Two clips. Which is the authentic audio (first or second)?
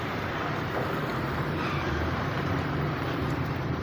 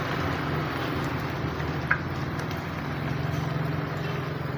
second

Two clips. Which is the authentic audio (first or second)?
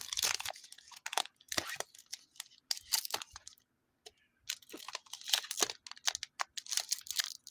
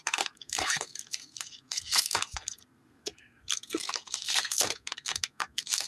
first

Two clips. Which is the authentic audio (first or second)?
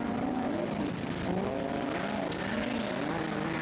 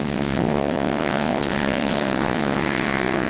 first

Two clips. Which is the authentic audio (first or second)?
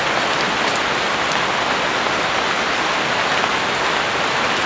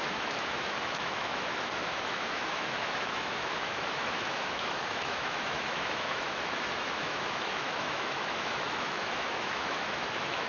first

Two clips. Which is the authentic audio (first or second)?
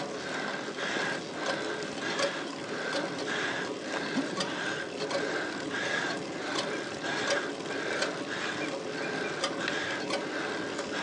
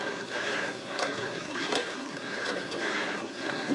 first